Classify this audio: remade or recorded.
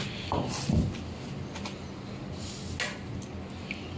recorded